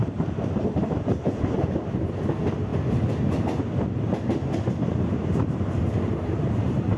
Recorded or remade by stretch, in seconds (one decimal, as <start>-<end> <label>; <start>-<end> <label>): 0.0-2.7 remade; 2.7-4.8 recorded; 4.8-7.0 remade